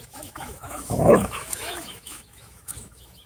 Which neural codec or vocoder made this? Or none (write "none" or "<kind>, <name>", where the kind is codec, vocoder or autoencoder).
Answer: autoencoder, DAC-VAE